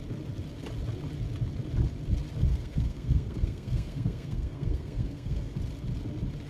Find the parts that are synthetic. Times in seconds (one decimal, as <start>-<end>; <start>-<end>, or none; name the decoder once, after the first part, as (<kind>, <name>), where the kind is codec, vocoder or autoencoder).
2.5-5.6 (codec, SNAC)